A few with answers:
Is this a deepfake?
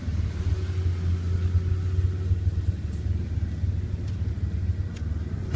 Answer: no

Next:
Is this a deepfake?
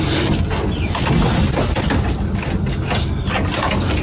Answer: no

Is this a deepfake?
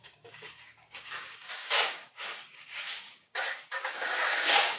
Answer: yes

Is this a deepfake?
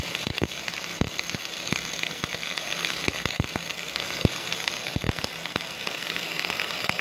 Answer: yes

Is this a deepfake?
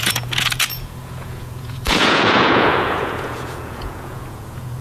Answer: yes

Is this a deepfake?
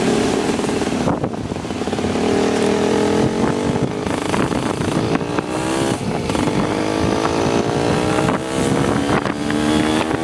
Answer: no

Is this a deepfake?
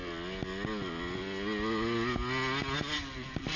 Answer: no